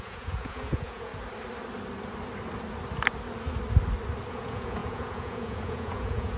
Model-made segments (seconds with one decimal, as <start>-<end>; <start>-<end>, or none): 0.0-1.1; 4.3-6.4